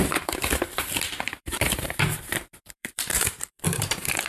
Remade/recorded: remade